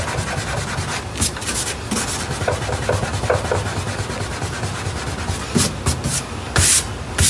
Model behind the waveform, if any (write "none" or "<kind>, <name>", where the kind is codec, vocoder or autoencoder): none